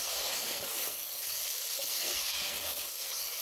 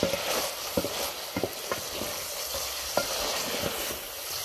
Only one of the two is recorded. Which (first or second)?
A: second